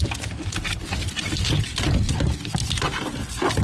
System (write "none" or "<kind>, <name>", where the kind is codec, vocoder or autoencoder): none